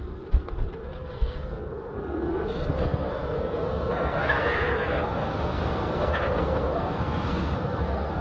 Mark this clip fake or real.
fake